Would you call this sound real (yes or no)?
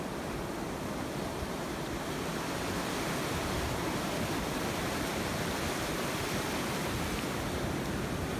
yes